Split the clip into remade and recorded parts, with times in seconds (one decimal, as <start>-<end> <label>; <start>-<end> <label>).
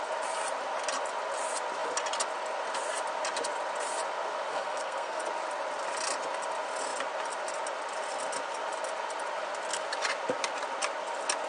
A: 0.0-4.5 recorded; 4.5-5.2 remade; 5.2-11.5 recorded